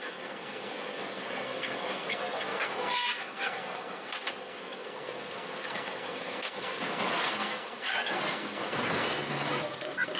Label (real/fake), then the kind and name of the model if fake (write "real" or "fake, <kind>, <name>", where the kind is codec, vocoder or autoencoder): fake, codec, SNAC